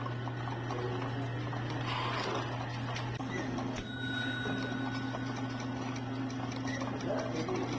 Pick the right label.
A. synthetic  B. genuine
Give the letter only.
B